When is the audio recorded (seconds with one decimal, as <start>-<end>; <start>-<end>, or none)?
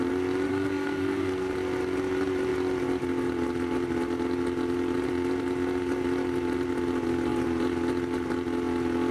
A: 0.0-0.5; 1.5-9.1